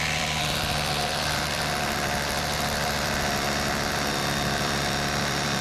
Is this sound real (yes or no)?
no